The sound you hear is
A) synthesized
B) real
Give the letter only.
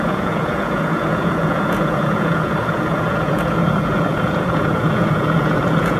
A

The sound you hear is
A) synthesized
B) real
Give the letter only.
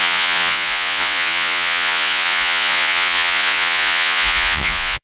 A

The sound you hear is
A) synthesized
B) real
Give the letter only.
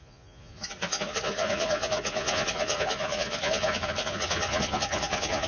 A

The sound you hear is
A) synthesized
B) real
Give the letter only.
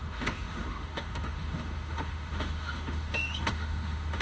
A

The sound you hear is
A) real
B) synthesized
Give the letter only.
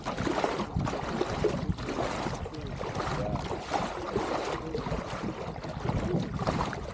A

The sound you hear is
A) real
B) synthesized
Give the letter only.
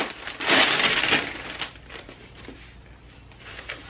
A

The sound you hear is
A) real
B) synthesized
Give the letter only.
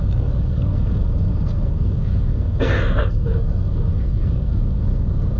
B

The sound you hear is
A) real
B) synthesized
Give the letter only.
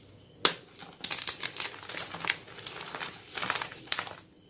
A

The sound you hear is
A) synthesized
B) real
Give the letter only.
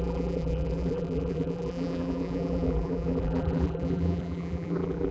A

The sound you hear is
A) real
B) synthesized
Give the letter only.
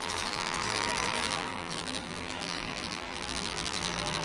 B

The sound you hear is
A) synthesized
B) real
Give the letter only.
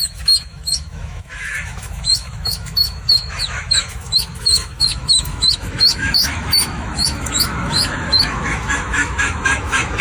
A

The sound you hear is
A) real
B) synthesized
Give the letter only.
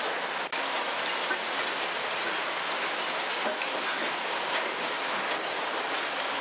A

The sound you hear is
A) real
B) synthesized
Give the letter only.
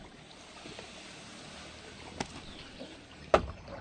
A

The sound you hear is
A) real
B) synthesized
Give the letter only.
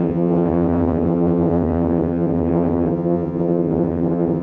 B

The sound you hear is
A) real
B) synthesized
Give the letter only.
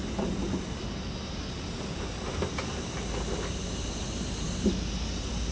A